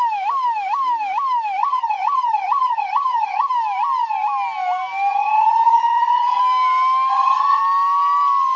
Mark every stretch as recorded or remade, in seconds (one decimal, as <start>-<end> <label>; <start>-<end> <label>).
0.0-1.6 recorded; 1.6-3.5 remade; 3.5-5.1 recorded; 5.1-6.4 remade; 6.4-7.1 recorded; 7.1-7.6 remade; 7.6-8.6 recorded